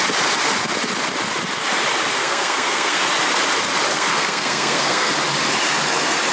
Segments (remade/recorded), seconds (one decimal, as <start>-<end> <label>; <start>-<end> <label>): 0.0-2.2 recorded; 2.2-3.0 remade; 3.0-3.9 recorded; 3.9-5.1 remade; 5.1-6.3 recorded